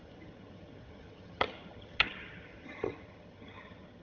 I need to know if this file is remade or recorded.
remade